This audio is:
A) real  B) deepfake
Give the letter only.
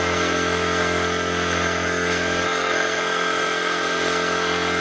B